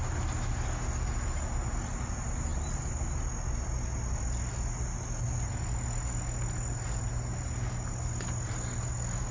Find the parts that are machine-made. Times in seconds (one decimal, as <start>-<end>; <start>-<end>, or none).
none